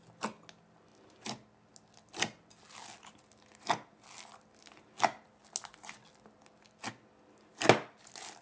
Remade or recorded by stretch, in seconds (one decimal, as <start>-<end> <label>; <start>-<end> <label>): 0.0-8.4 recorded